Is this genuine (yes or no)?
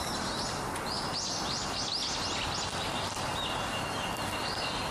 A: yes